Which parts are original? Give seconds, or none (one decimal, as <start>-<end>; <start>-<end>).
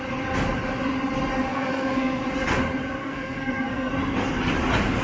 0.0-1.5; 2.2-3.0; 3.9-5.0